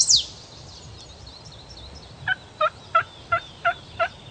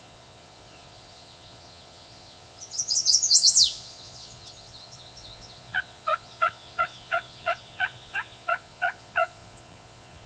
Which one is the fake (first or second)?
second